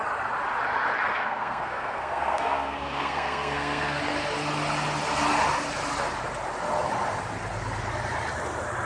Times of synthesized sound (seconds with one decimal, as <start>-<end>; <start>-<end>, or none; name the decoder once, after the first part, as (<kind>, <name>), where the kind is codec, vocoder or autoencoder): 1.1-4.0 (codec, SNAC)